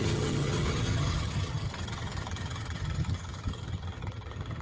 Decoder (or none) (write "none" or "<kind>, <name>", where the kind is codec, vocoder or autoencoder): vocoder, HiFi-GAN